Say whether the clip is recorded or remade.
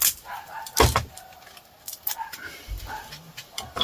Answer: recorded